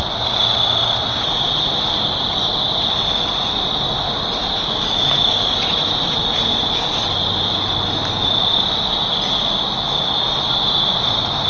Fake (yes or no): no